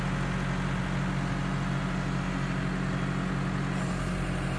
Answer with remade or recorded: recorded